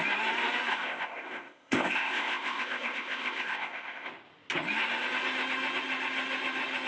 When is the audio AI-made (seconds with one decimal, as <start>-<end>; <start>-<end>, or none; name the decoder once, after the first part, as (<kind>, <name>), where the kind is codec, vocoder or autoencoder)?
0.7-4.1 (codec, ZipCodec)